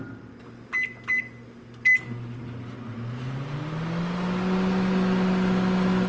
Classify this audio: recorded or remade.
recorded